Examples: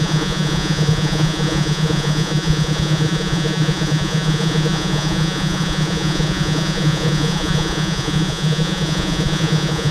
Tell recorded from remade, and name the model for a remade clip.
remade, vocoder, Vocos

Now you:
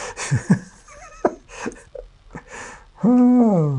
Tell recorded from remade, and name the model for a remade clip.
recorded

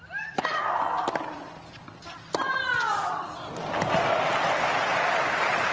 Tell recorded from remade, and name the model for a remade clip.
recorded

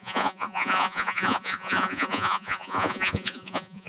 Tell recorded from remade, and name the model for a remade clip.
remade, vocoder, Vocos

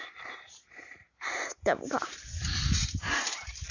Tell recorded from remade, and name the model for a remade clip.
remade, vocoder, BigVGAN v2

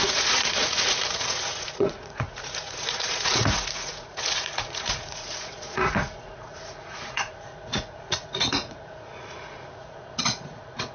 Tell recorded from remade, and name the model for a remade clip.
remade, vocoder, Vocos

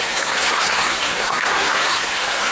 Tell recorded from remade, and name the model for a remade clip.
remade, codec, SNAC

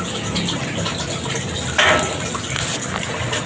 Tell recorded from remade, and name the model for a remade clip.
recorded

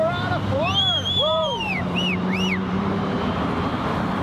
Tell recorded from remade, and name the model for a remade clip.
remade, vocoder, BigVGAN v2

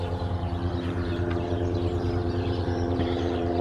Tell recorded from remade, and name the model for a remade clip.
remade, vocoder, BigVGAN v2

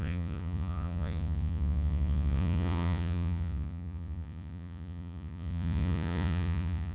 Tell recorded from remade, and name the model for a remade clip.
remade, vocoder, Vocos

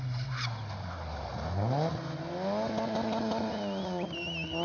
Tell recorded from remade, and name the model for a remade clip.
recorded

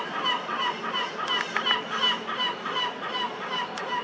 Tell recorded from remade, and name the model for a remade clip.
recorded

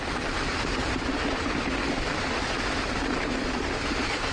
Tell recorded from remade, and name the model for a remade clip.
recorded